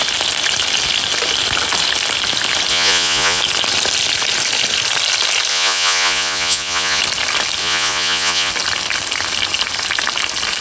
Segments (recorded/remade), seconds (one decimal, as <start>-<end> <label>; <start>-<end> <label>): 0.0-2.7 recorded; 2.7-3.4 remade; 3.4-5.5 recorded; 5.5-7.0 remade; 7.0-7.6 recorded; 7.6-8.5 remade; 8.5-10.6 recorded